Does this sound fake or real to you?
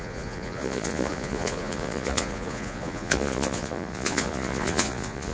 fake